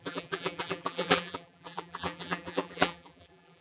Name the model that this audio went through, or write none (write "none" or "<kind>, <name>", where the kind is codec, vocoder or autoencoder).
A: vocoder, BigVGAN v2